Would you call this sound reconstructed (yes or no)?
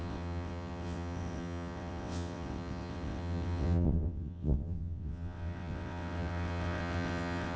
yes